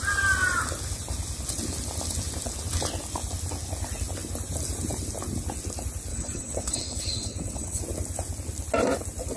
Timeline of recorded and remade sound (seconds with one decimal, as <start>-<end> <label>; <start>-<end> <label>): 0.0-6.1 recorded; 6.1-7.8 remade; 7.8-9.4 recorded